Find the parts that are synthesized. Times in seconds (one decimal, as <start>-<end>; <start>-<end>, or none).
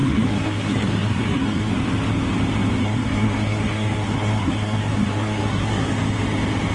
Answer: 0.0-1.7; 2.8-5.9